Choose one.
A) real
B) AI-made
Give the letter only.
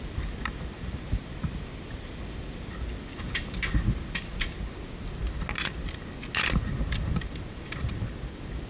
A